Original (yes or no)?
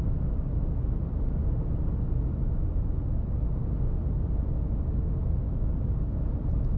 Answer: yes